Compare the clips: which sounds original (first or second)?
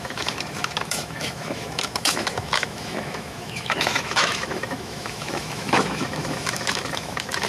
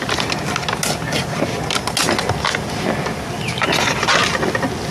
second